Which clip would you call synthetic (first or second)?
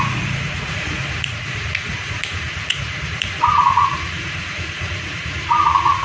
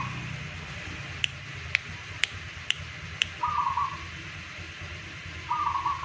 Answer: first